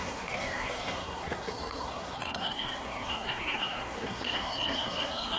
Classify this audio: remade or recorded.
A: remade